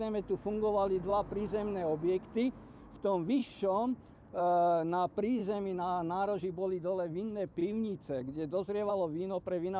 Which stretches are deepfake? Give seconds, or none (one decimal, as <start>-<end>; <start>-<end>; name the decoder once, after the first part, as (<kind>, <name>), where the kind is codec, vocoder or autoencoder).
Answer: 0.0-1.1 (autoencoder, DAC-VAE); 2.5-3.4; 4.4-5.4; 6.4-7.6; 8.9-9.8